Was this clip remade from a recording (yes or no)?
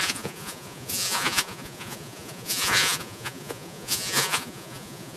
yes